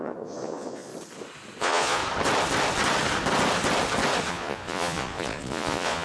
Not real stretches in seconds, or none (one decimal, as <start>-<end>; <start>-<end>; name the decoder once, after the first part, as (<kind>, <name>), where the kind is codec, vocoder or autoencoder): 0.0-0.9 (vocoder, Vocos); 1.6-2.0; 4.3-6.0